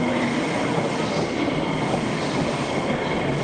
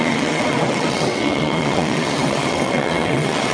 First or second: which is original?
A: first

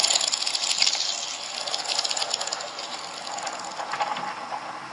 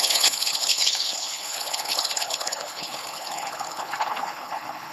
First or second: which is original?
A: first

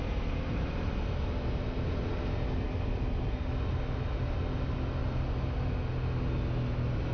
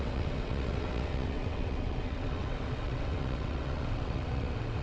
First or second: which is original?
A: first